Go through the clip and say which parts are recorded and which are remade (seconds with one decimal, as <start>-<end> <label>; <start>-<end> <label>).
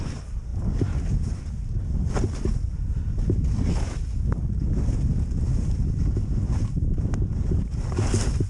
0.0-8.5 recorded